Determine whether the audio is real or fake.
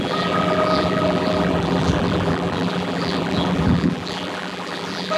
fake